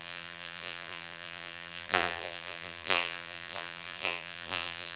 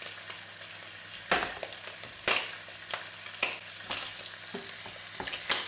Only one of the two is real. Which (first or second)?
second